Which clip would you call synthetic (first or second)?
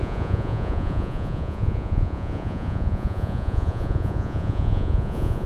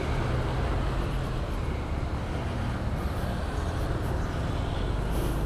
first